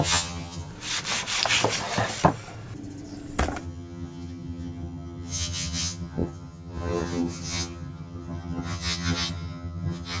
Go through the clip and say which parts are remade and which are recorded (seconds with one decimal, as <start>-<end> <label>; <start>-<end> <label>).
0.0-0.7 remade; 0.7-3.6 recorded; 3.6-10.2 remade

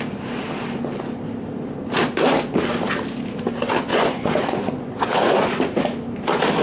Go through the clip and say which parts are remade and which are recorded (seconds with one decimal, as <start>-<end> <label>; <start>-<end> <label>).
0.0-3.9 recorded; 3.9-5.5 remade; 5.5-6.6 recorded

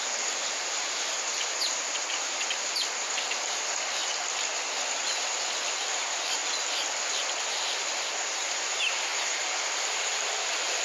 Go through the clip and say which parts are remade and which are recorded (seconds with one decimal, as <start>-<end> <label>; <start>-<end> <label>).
0.0-4.0 remade; 4.0-5.9 recorded; 5.9-6.4 remade; 6.4-8.0 recorded; 8.0-10.8 remade

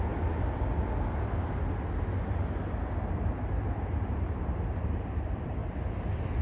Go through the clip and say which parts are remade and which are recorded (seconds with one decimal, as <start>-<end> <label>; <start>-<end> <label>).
0.0-6.4 recorded

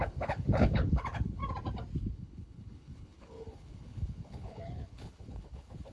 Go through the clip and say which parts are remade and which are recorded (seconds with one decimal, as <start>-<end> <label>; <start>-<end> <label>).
0.0-1.4 remade; 1.4-2.0 recorded; 2.0-5.9 remade